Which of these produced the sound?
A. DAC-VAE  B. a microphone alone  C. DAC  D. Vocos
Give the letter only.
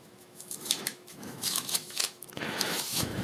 A